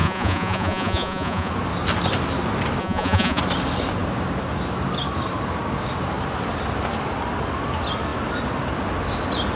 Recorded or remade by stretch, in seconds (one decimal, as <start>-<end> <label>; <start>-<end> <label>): 0.0-1.5 remade; 1.5-2.8 recorded; 2.8-3.4 remade; 3.4-9.6 recorded